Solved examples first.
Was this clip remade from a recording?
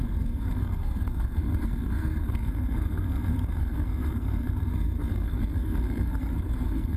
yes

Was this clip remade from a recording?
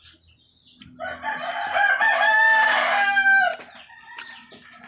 no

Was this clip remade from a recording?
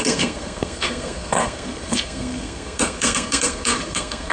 yes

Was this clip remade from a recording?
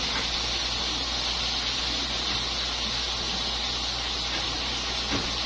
no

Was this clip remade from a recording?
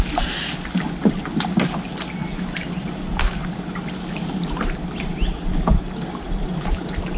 no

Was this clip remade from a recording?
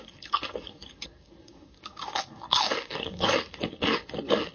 yes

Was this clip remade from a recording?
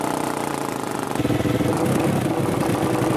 no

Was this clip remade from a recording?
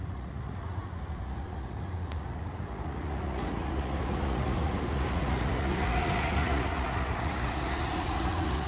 yes